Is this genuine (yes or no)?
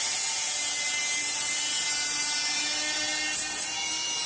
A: yes